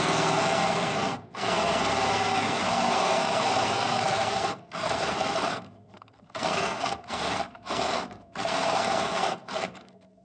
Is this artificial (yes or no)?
yes